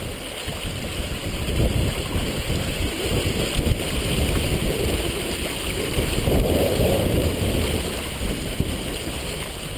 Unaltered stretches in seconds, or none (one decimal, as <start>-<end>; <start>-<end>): 0.0-9.8